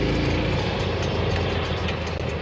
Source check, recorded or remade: recorded